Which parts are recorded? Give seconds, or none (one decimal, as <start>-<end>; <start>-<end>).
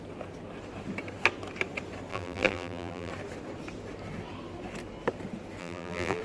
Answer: 0.0-2.1; 3.1-5.6